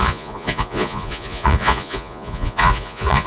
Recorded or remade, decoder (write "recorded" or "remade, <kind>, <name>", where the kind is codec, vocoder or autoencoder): remade, vocoder, Vocos